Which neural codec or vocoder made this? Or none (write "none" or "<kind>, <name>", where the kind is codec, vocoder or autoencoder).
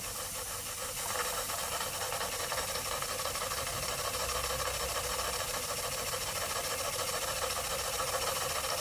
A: none